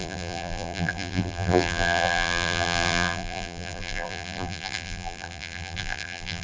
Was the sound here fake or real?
fake